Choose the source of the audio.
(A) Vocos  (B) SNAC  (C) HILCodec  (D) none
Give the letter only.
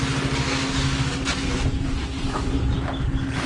D